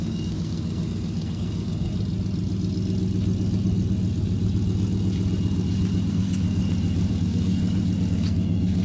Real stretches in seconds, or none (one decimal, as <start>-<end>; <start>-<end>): 1.9-6.1; 6.6-7.1; 7.6-8.1